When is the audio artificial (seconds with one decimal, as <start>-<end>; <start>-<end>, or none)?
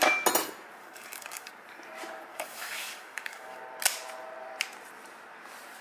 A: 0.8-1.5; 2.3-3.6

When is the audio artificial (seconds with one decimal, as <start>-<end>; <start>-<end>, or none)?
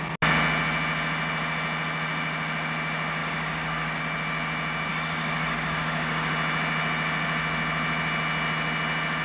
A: 3.2-4.0; 4.9-6.3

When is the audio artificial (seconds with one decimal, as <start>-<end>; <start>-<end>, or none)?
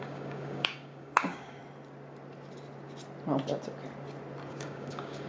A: 0.0-1.6; 4.5-5.3